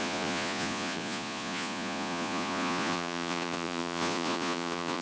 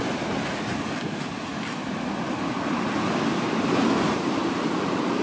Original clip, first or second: second